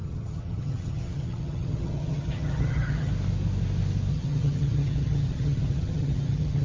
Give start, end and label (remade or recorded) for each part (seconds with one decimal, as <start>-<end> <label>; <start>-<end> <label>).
0.0-3.1 remade; 3.1-4.1 recorded; 4.1-6.6 remade